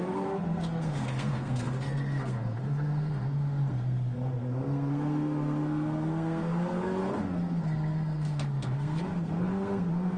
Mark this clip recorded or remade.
remade